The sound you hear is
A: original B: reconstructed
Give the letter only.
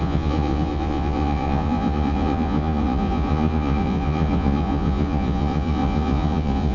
B